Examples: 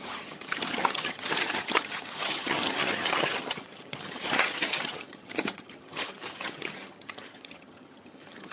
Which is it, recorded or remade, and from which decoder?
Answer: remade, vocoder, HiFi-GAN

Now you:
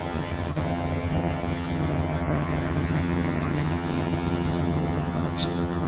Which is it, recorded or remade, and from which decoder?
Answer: remade, vocoder, HiFi-GAN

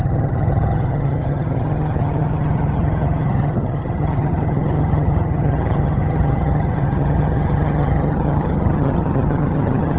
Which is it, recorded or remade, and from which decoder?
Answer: remade, vocoder, HiFi-GAN